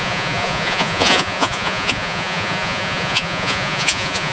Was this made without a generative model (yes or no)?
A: no